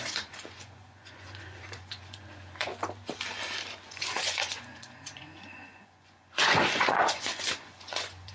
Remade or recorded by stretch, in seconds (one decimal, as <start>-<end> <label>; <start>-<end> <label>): 0.0-2.7 remade; 2.7-3.8 recorded; 3.8-8.3 remade